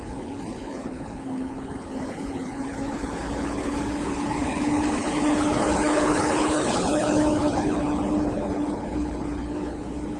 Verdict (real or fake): fake